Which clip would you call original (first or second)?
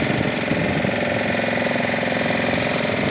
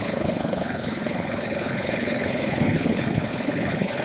first